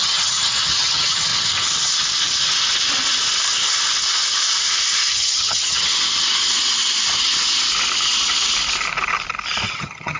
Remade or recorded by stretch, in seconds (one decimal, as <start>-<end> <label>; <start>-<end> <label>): 0.0-1.3 remade; 1.3-5.1 recorded; 5.1-5.9 remade; 5.9-9.7 recorded; 9.7-10.2 remade